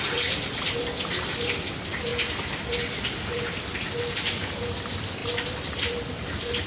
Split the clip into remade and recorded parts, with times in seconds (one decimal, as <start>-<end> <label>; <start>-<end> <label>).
0.0-6.7 recorded